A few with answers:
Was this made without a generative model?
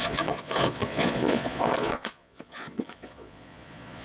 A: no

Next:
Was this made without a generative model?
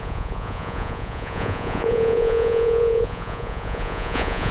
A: no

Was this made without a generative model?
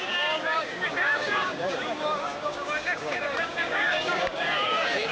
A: no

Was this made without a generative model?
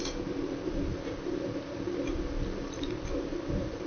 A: yes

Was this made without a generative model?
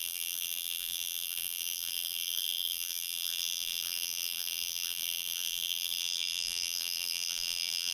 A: no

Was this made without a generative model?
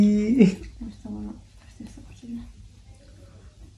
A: yes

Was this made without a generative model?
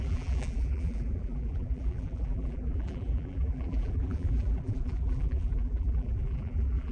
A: no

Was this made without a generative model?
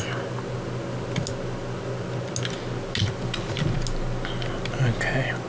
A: yes